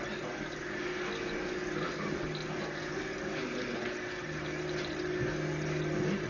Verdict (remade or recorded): recorded